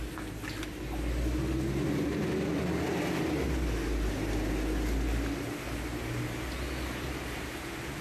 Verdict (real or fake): real